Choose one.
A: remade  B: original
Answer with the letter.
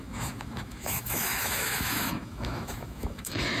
A